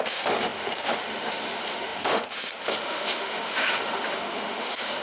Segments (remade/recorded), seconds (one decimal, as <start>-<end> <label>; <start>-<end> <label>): 0.0-5.0 remade